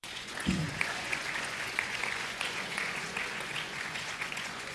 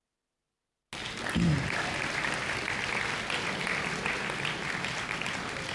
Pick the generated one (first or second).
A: first